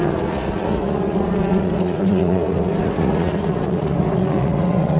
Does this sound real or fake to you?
fake